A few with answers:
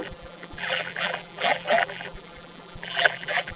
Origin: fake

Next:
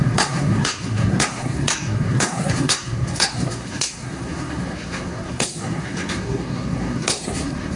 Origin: fake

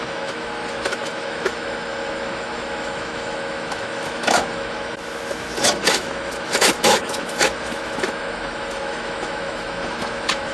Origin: fake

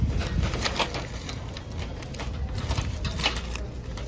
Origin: real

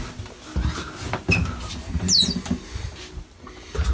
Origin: real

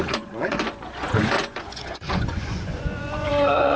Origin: fake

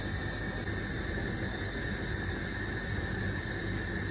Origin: real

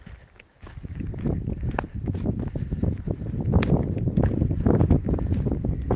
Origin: fake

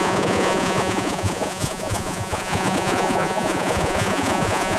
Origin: fake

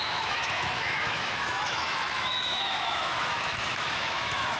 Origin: fake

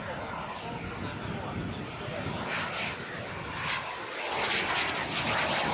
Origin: real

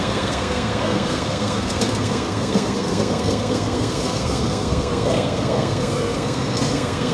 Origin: fake